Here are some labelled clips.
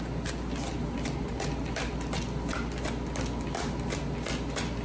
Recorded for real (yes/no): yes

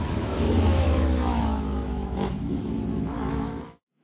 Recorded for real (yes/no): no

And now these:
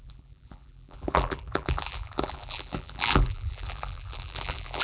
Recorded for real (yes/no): no